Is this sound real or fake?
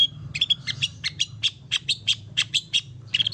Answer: fake